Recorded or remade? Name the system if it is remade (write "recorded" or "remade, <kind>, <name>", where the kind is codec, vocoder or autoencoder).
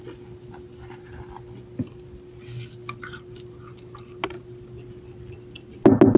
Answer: recorded